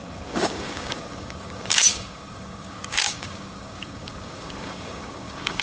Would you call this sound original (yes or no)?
no